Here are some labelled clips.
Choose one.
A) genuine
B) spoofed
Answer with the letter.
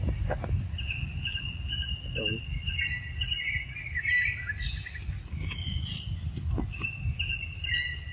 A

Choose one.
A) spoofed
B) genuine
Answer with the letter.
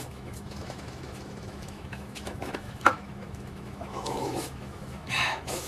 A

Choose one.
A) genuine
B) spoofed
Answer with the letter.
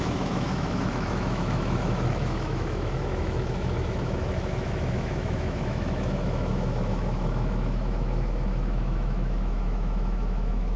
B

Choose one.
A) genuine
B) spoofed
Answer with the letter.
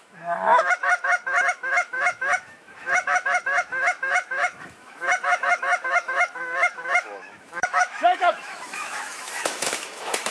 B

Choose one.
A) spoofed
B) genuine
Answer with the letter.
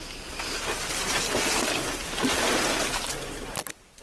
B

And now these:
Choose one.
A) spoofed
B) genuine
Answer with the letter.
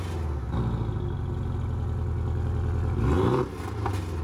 B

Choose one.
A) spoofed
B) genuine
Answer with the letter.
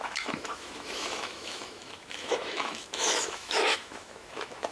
A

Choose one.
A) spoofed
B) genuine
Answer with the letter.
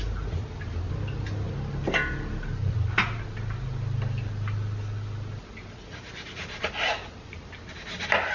B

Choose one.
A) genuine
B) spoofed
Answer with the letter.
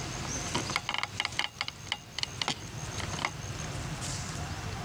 A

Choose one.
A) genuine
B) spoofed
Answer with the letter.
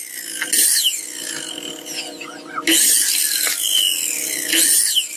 A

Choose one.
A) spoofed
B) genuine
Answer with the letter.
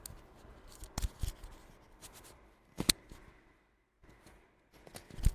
B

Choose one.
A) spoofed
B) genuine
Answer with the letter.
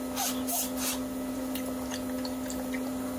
B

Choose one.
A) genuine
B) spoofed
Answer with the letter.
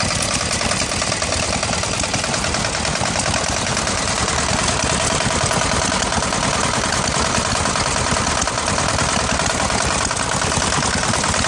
A